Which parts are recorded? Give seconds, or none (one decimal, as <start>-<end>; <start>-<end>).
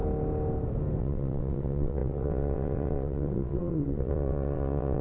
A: 0.0-1.0